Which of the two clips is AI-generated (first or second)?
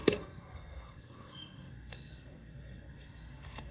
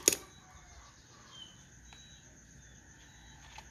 first